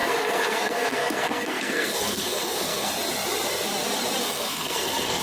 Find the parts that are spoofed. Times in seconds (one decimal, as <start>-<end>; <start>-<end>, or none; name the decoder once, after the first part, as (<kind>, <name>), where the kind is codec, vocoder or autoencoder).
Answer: 0.0-2.9 (codec, SNAC); 4.2-5.2